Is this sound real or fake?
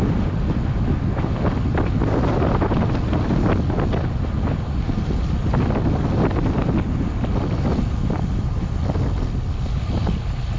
real